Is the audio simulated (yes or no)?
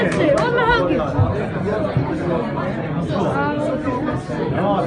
no